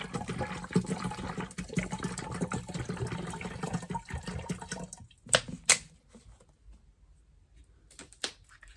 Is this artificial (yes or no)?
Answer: no